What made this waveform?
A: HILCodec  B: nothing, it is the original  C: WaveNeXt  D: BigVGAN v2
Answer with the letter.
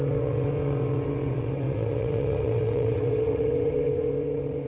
C